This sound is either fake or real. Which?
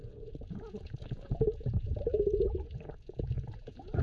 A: fake